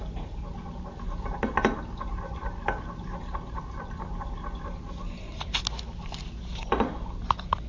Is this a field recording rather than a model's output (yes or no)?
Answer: yes